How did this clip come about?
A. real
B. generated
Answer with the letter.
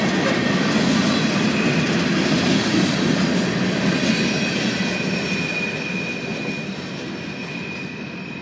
A